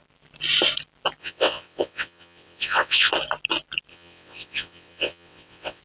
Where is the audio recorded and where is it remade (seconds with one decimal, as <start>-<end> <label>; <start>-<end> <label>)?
0.0-1.2 recorded; 1.2-3.1 remade; 3.1-3.9 recorded; 3.9-5.8 remade

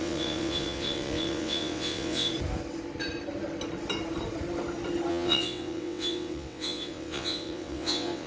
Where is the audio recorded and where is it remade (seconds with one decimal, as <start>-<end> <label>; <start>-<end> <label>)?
0.0-2.3 remade; 2.3-5.1 recorded; 5.1-8.3 remade

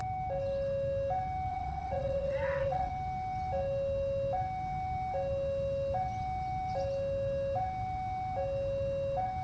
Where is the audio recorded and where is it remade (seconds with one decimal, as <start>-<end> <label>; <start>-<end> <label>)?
0.0-1.5 recorded; 1.5-2.9 remade; 2.9-9.4 recorded